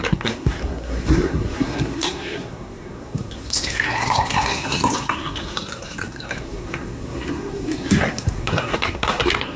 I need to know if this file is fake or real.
fake